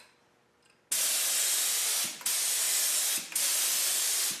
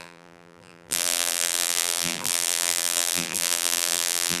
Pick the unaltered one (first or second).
first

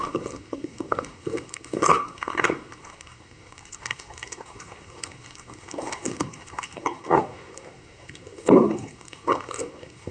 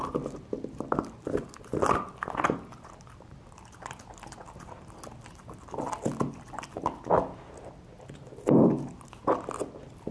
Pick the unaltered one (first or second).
second